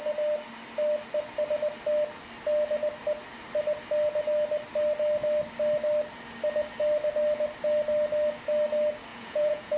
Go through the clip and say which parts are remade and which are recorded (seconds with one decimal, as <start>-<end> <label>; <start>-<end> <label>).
0.0-9.1 recorded; 9.1-9.8 remade